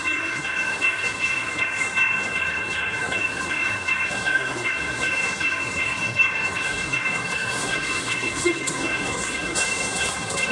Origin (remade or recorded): remade